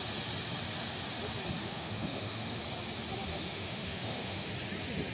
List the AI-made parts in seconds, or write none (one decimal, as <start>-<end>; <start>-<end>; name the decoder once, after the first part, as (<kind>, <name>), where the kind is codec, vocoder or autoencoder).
1.6-2.6 (autoencoder, DAC-VAE); 3.3-4.5